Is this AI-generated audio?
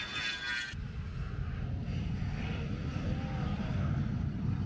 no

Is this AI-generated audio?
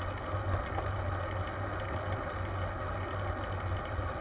no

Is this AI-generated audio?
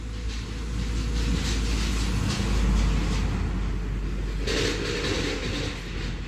no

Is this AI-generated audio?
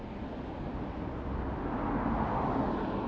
no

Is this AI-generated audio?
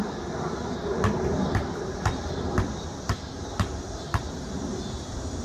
yes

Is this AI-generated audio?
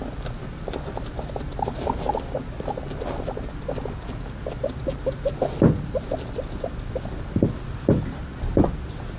no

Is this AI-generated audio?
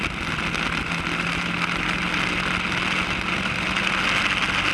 no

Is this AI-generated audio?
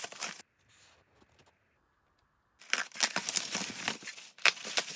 no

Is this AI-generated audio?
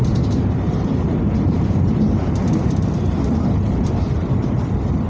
yes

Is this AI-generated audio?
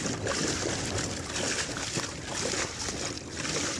no